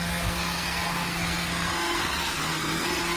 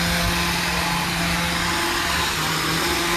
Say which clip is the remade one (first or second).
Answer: first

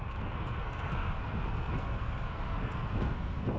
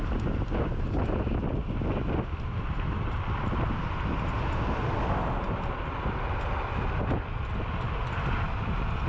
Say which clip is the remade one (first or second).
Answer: first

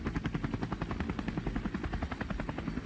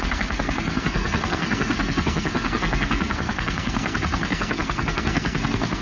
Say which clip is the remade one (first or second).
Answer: second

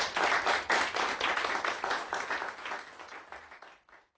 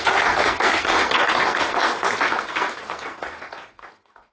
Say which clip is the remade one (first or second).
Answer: second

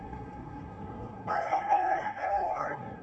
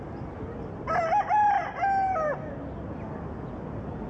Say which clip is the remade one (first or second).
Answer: first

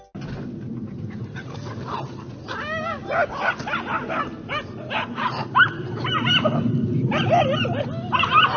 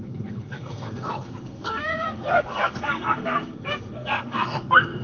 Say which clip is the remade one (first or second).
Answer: second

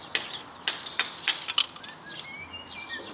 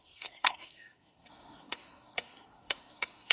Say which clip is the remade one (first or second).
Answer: second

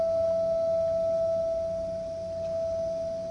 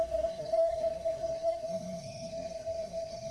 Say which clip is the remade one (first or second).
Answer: second